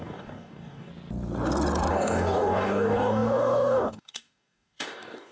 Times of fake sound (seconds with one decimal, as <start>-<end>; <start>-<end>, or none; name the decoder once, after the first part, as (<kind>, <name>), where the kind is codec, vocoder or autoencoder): 0.0-0.9 (codec, DAC); 1.9-5.3